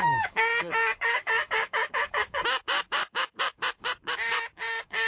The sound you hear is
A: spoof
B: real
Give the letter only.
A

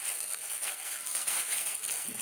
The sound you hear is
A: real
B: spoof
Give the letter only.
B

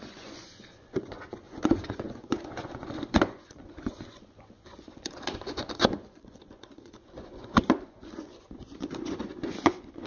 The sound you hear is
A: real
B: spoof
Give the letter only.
B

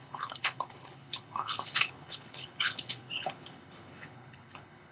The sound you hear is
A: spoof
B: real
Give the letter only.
A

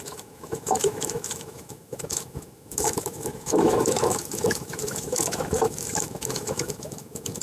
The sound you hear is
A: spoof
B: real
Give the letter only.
A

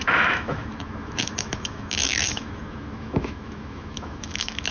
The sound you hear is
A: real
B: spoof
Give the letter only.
B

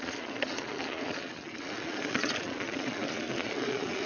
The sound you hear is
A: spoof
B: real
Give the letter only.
A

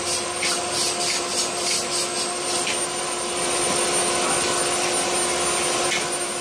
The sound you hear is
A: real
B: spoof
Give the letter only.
A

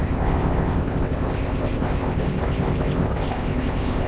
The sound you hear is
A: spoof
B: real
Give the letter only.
A